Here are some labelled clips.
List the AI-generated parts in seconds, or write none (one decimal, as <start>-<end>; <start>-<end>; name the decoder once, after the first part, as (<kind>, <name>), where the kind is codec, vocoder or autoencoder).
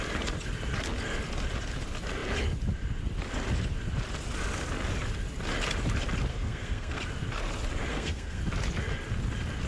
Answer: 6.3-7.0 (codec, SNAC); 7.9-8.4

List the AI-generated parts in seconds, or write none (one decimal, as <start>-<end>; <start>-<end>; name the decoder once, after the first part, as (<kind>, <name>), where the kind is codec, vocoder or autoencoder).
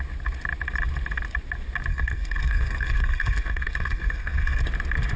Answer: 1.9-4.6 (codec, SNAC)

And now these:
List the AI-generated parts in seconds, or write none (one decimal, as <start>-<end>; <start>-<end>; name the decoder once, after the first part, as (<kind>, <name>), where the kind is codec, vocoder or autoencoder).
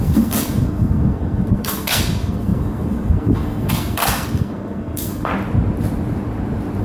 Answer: 0.0-5.3 (codec, SNAC)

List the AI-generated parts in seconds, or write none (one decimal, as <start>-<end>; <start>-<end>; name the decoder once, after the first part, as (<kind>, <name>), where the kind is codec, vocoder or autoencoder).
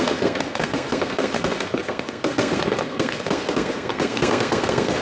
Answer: 0.0-5.0 (codec, SNAC)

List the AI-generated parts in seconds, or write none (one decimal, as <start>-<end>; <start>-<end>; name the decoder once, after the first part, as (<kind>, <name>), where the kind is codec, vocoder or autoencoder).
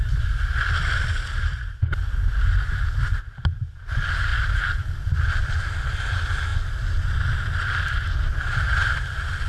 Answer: none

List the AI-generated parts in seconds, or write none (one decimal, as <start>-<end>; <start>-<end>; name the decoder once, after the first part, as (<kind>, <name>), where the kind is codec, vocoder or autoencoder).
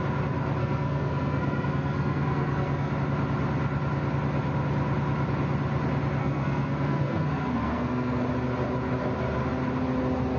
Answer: 0.6-2.9 (codec, SNAC); 6.2-8.2